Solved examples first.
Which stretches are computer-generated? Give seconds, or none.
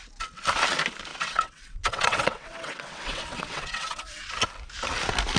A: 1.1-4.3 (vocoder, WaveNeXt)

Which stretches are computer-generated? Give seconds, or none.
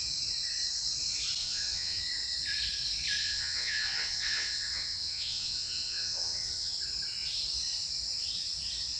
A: 1.4-2.0 (vocoder, WaveNeXt); 3.2-6.7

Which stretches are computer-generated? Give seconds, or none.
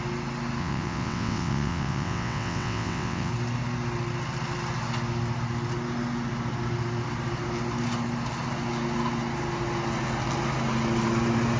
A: 0.6-3.3 (vocoder, WaveNeXt)